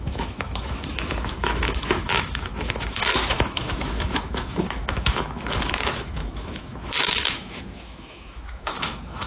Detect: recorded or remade remade